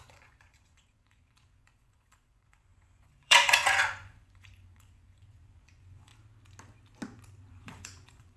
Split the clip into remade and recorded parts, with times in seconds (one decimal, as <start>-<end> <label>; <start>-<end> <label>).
0.0-6.1 remade; 6.1-7.5 recorded; 7.5-8.4 remade